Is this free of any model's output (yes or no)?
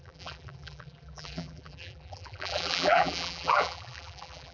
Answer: no